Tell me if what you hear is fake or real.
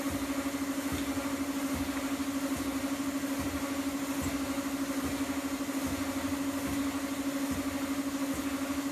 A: real